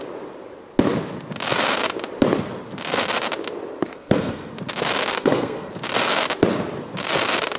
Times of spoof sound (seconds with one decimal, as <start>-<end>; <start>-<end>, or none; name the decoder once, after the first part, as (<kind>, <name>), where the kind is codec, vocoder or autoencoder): 3.9-4.5 (codec, SNAC); 5.1-5.7